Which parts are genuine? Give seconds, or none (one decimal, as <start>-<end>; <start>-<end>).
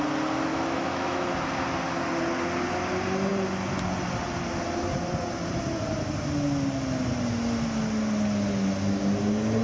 0.0-0.5; 1.3-9.6